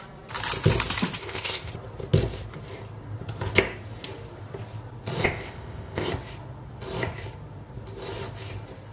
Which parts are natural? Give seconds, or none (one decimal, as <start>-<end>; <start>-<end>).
0.0-1.2; 1.7-5.2; 6.1-8.9